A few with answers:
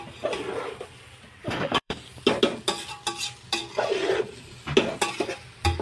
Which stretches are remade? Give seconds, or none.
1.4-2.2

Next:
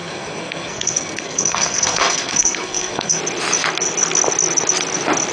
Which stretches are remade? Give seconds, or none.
0.0-3.2

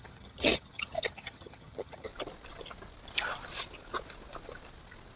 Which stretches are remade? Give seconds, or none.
0.0-2.1

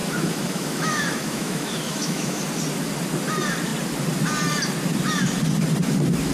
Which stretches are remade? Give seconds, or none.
0.0-2.4

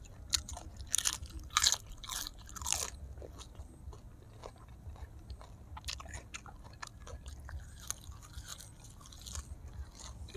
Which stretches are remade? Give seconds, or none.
none

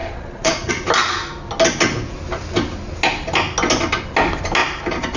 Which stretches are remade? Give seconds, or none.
0.0-0.7

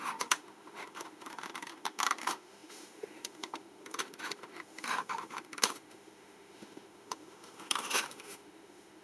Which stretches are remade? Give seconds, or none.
0.0-9.0

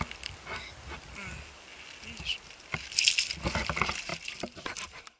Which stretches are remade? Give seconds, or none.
4.1-5.2